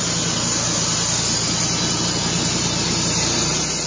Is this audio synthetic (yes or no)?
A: no